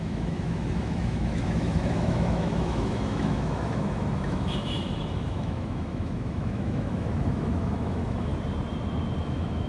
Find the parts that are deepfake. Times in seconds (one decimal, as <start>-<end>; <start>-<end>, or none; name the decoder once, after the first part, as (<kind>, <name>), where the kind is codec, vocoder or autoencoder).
0.0-8.3 (autoencoder, DAC-VAE); 9.2-9.7